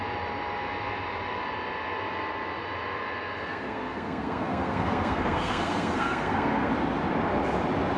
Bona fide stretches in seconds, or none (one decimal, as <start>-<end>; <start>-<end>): 0.0-3.5; 6.7-8.0